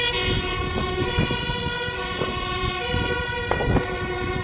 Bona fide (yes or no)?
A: yes